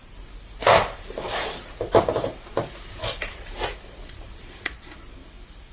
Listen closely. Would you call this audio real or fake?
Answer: fake